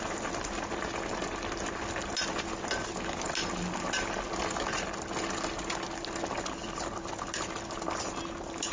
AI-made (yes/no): no